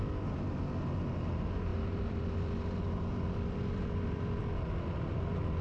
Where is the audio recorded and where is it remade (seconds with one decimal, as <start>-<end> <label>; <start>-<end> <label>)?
0.0-1.7 recorded; 1.7-4.4 remade; 4.4-5.6 recorded